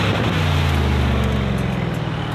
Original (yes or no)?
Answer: yes